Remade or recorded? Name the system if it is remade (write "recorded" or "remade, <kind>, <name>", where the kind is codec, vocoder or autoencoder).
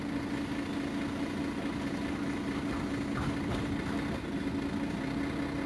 recorded